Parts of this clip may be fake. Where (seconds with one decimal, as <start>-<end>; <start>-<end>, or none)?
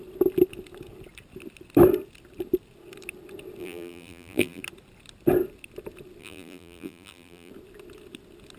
3.6-4.6; 6.2-7.5